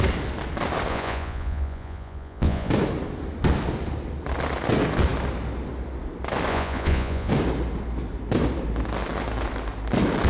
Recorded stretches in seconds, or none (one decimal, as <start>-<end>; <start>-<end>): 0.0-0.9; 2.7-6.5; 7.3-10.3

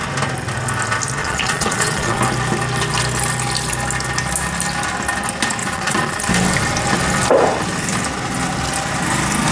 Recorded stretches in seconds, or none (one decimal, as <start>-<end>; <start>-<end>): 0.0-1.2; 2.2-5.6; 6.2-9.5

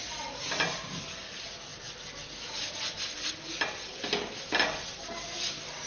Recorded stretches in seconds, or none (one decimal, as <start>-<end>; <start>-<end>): 0.0-5.9

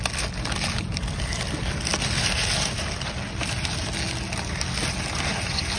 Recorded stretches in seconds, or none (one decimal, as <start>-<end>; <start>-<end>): 0.0-5.8

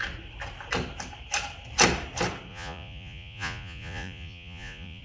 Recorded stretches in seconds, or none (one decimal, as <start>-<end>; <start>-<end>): 0.0-2.5